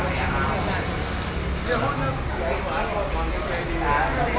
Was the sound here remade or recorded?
recorded